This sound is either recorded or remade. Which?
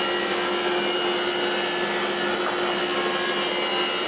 recorded